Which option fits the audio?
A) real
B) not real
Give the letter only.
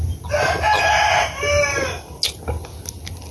A